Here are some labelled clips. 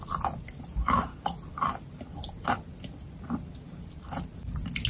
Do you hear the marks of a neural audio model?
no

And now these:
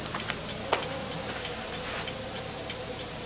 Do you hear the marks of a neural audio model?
no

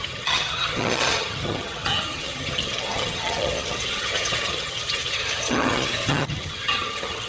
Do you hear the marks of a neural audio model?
yes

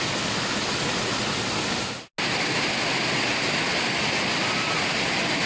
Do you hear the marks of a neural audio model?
no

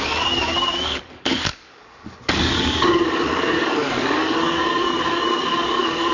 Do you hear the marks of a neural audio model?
yes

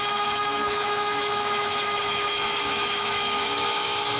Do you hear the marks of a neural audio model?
yes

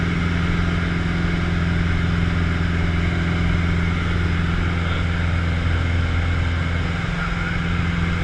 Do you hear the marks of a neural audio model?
no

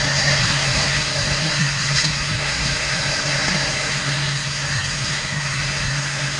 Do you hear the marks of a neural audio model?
yes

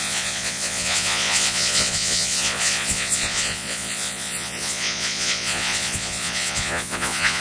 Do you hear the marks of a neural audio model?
yes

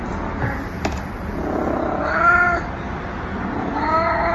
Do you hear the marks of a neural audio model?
no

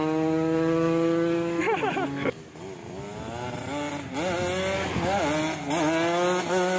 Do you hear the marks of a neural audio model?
no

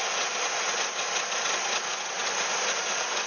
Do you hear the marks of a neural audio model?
no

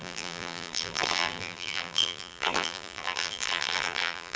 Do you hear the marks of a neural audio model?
yes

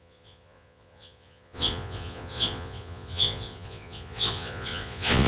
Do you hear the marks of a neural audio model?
yes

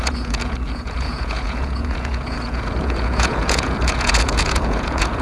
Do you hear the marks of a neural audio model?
yes